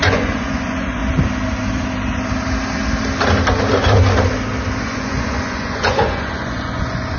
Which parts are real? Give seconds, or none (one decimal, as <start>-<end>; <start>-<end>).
1.0-4.8